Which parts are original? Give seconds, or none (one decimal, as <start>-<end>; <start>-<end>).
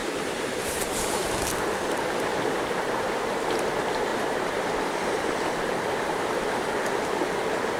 1.9-2.3; 2.9-4.1; 6.7-7.8